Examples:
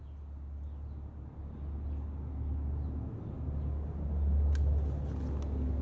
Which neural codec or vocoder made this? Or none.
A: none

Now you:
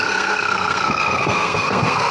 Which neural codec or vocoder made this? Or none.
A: codec, SNAC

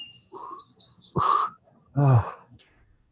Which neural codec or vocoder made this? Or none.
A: codec, DAC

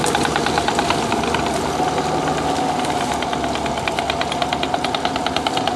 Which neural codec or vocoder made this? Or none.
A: none